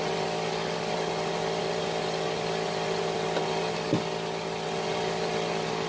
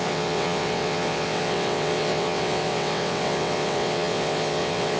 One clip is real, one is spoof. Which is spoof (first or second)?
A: second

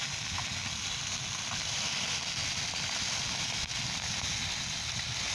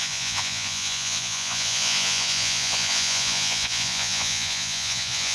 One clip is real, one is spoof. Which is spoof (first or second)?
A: second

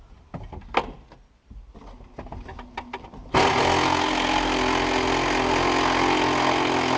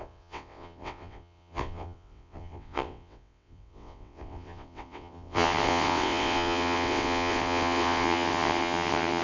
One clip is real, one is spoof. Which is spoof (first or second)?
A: second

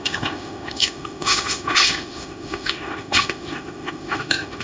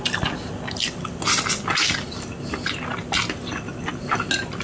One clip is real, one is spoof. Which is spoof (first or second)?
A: first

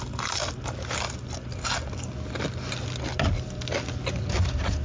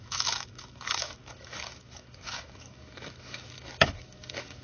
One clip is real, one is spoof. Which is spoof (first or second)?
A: second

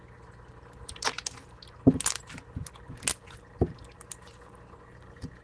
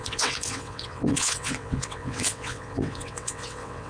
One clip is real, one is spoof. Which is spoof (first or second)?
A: second